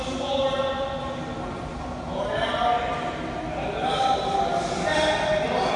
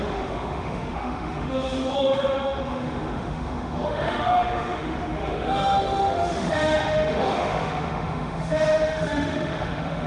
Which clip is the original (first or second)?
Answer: first